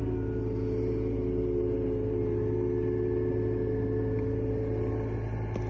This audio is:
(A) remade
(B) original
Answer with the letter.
B